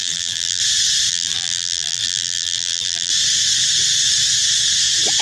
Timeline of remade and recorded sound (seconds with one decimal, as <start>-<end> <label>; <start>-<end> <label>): 0.0-0.6 remade; 0.6-1.1 recorded; 1.1-3.1 remade; 3.1-5.2 recorded